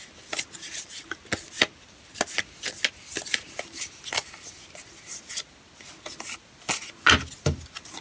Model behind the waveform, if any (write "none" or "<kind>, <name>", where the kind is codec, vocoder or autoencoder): none